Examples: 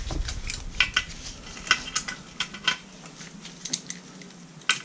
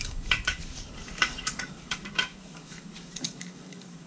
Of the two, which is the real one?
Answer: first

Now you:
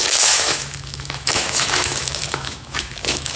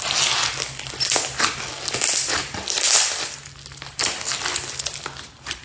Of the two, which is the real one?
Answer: second